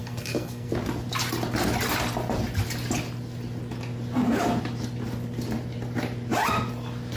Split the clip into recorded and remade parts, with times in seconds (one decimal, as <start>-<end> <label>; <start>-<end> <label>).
0.0-0.7 remade; 0.7-7.2 recorded